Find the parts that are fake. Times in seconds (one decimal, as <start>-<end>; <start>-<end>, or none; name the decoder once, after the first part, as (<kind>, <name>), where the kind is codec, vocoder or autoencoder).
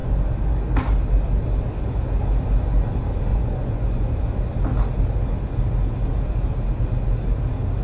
3.3-4.3 (vocoder, Vocos)